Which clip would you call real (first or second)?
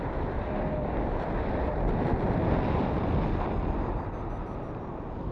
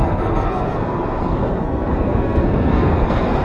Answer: first